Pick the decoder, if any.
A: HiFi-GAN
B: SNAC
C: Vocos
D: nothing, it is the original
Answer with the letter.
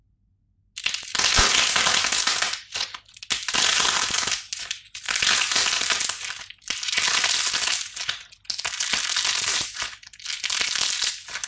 D